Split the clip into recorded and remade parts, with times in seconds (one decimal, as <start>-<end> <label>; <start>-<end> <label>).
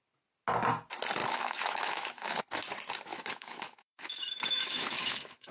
0.0-1.2 recorded; 1.2-2.4 remade; 2.4-3.1 recorded; 3.1-5.5 remade